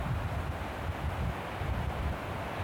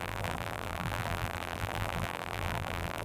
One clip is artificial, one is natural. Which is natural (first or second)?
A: first